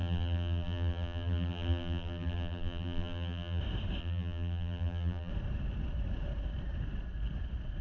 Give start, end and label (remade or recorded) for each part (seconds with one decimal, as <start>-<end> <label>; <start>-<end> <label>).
0.0-3.6 remade; 3.6-4.0 recorded; 4.0-5.3 remade; 5.3-7.8 recorded